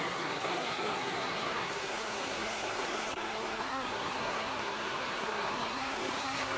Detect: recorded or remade remade